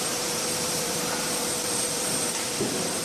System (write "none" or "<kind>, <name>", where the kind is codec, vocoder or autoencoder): vocoder, BigVGAN v2